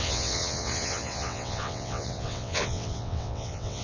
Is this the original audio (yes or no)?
no